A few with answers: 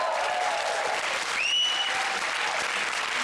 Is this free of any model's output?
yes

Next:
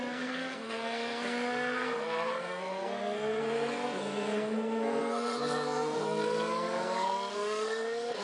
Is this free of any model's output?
no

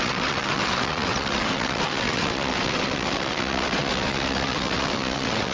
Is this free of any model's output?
no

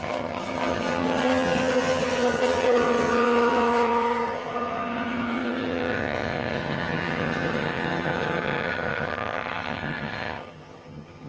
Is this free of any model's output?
no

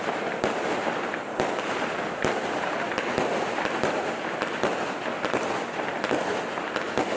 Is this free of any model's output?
yes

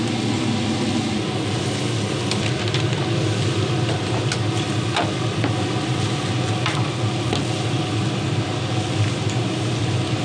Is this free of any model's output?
yes